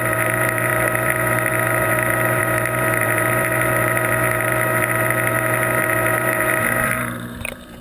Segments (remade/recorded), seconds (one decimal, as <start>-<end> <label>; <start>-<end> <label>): 0.0-7.8 remade